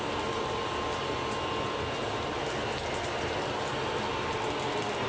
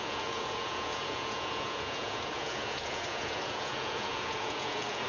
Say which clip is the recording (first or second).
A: first